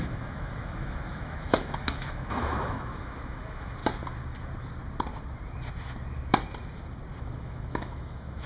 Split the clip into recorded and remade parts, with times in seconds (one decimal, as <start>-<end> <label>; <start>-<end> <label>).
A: 0.0-3.8 remade; 3.8-7.4 recorded; 7.4-8.5 remade